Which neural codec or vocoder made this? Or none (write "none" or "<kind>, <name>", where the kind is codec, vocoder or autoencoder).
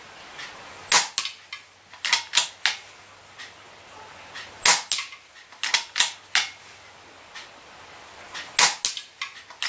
none